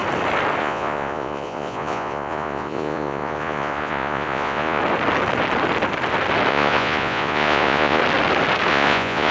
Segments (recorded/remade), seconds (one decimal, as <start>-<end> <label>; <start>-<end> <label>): 0.0-0.6 recorded; 0.6-4.8 remade; 4.8-6.5 recorded; 6.5-8.0 remade; 8.0-8.7 recorded; 8.7-9.3 remade